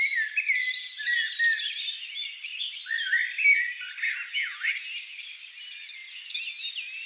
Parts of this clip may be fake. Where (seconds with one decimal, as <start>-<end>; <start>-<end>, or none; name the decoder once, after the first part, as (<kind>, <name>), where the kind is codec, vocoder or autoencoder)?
none